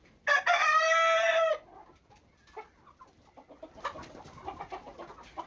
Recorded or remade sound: recorded